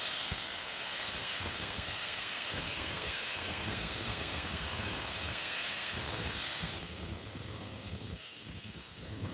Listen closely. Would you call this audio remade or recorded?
remade